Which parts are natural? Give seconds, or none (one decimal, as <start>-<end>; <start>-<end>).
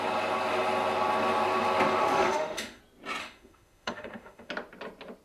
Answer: 0.0-2.0; 2.8-3.2; 4.5-5.2